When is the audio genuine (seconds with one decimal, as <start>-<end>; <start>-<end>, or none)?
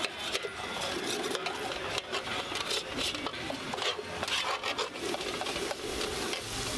0.0-6.8